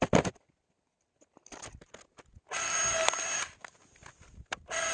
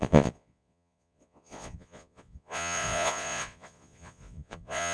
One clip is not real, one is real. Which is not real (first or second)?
second